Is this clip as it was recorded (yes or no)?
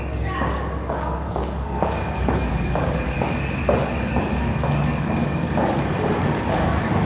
no